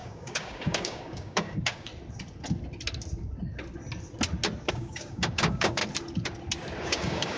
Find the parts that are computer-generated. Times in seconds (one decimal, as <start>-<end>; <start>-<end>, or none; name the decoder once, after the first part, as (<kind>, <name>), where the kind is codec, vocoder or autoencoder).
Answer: 0.0-1.9 (codec, DAC); 4.7-5.8; 6.8-7.4